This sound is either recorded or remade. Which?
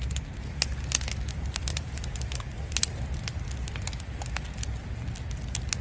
recorded